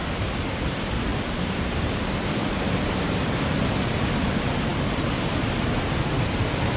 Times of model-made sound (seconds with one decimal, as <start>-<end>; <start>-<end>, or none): 1.1-3.7